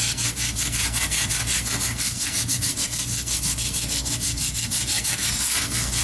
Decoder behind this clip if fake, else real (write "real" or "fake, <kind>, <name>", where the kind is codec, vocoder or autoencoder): fake, codec, SNAC